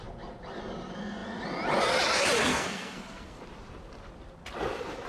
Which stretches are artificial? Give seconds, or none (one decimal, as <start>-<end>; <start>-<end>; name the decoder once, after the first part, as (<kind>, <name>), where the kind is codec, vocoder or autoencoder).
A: 2.5-3.4 (codec, SNAC)